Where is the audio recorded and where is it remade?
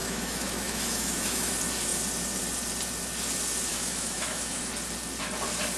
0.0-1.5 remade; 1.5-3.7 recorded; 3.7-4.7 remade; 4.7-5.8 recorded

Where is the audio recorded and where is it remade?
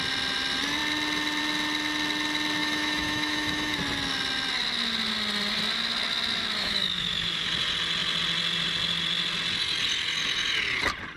0.0-2.6 recorded; 2.6-3.8 remade; 3.8-6.6 recorded; 6.6-7.5 remade; 7.5-11.2 recorded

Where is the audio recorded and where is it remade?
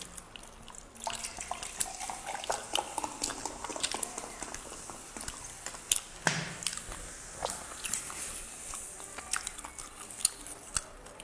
0.0-11.2 recorded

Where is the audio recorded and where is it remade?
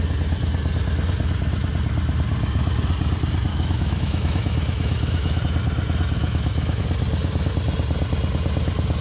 0.0-3.5 recorded; 3.5-5.4 remade; 5.4-6.2 recorded; 6.2-6.8 remade; 6.8-9.0 recorded